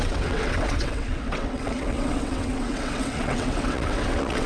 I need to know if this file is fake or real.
fake